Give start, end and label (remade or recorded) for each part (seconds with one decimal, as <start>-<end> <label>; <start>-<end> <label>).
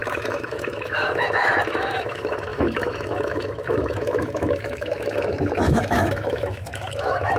0.0-7.4 remade